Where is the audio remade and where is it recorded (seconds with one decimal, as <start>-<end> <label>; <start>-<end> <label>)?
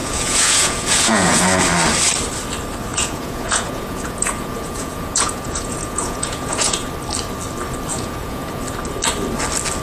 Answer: 0.0-1.6 remade; 1.6-2.9 recorded; 2.9-6.9 remade; 6.9-7.9 recorded; 7.9-8.6 remade; 8.6-9.8 recorded